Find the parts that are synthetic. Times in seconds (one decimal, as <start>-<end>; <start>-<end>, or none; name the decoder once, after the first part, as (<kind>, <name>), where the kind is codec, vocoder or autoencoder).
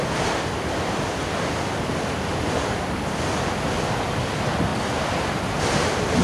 none